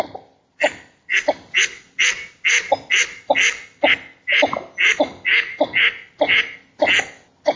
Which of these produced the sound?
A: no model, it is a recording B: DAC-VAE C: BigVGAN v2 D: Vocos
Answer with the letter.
A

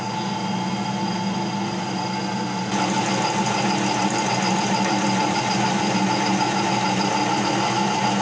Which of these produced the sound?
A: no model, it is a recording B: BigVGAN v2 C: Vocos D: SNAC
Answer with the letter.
A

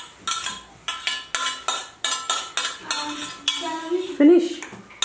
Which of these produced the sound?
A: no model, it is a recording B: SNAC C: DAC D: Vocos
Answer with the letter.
A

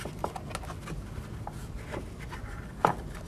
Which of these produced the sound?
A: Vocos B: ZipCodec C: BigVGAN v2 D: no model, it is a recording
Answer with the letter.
D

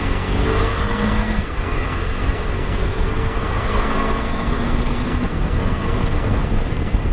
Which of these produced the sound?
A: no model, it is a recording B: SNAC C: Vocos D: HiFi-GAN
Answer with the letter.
B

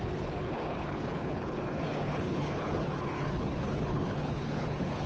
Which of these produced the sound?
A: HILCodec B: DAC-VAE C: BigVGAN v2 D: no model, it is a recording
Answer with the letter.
A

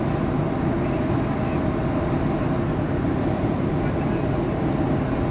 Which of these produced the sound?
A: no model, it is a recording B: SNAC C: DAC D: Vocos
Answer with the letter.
A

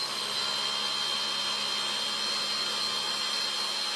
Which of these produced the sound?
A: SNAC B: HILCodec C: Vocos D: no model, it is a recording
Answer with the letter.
D